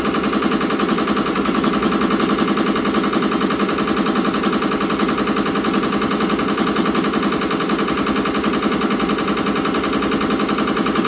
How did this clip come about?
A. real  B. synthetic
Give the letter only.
A